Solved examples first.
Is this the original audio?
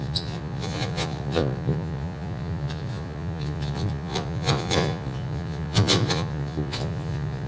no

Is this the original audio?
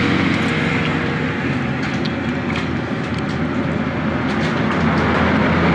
yes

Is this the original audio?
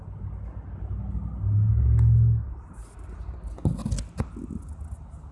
yes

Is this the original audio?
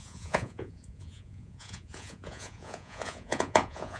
no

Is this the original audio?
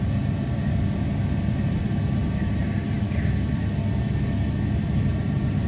yes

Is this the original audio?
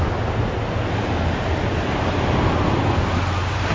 yes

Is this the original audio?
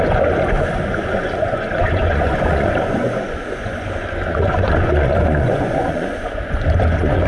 no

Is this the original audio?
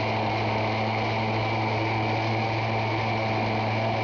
yes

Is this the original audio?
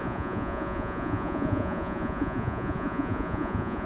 no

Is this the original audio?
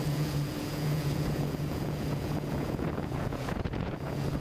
no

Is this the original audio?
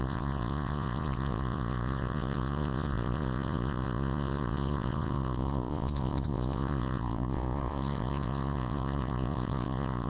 no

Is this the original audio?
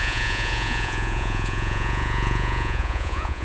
no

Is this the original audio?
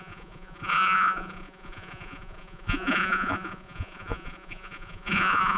no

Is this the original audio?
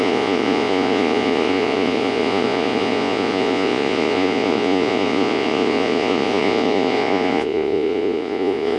no